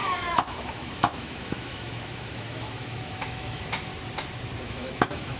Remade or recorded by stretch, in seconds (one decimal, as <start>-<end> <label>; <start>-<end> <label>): 0.0-3.9 remade; 3.9-4.6 recorded; 4.6-5.4 remade